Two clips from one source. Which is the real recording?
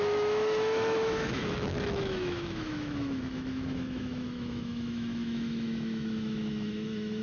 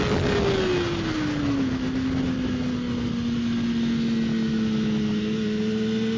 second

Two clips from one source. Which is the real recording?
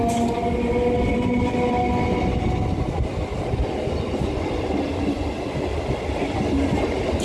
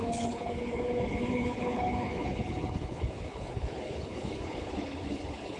first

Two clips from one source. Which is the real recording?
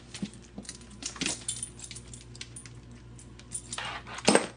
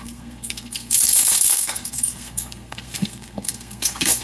first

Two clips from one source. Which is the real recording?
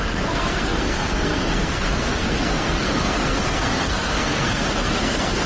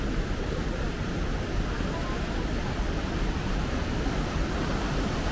second